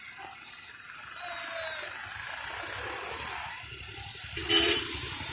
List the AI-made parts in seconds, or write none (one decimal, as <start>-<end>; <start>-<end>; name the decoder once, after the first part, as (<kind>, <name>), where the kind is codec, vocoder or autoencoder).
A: 4.4-5.3 (vocoder, BigVGAN v2)